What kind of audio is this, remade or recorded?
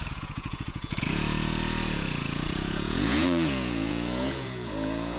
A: remade